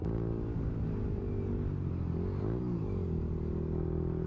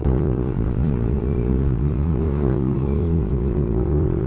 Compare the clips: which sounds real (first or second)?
first